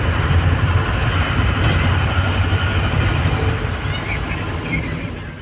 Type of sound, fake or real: real